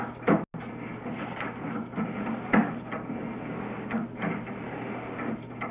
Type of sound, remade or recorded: recorded